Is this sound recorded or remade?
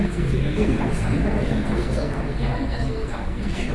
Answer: remade